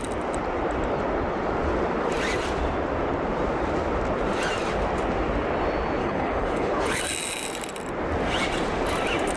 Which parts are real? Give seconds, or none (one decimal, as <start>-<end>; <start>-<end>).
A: 0.0-6.0; 7.0-9.4